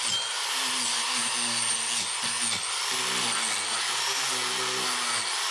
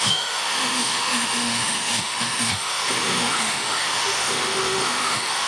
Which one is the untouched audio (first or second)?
first